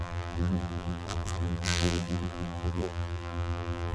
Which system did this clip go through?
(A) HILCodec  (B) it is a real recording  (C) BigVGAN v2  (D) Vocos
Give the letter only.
C